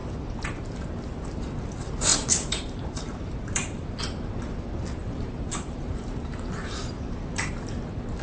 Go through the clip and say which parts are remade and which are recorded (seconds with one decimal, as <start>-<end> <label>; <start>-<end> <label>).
0.0-2.1 recorded; 2.1-4.0 remade; 4.0-5.0 recorded; 5.0-7.7 remade; 7.7-8.2 recorded